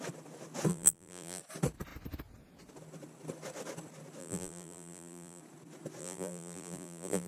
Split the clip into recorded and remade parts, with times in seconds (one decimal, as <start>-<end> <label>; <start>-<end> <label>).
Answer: 0.0-0.7 recorded; 0.7-1.4 remade; 1.4-4.2 recorded; 4.2-5.4 remade; 5.4-6.0 recorded; 6.0-7.3 remade

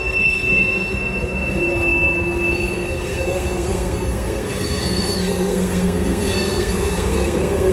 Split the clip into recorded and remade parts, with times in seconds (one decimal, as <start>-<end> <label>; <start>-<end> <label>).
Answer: 0.0-7.7 remade

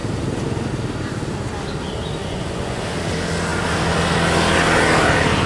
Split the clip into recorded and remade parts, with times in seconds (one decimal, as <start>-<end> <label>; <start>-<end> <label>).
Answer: 0.0-2.2 recorded; 2.2-2.8 remade; 2.8-5.5 recorded

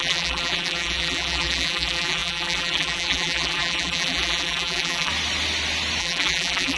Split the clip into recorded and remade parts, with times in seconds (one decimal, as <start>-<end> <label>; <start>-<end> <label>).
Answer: 0.0-5.1 remade; 5.1-6.0 recorded; 6.0-6.8 remade

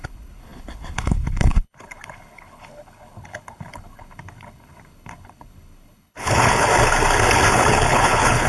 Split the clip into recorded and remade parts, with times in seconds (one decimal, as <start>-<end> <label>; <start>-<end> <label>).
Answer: 0.0-6.7 remade; 6.7-7.5 recorded; 7.5-8.5 remade